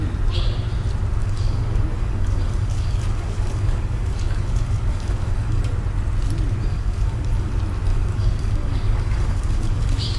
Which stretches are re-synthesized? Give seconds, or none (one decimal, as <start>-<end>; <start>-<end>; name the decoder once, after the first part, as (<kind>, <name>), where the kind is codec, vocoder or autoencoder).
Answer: 1.2-5.6 (codec, DAC); 6.7-7.5; 7.9-10.2